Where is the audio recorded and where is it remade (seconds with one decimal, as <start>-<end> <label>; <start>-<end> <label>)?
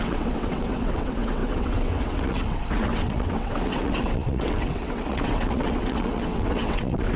0.0-7.2 remade